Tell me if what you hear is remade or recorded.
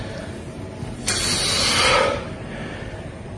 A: recorded